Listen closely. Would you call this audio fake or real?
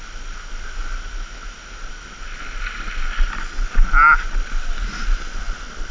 real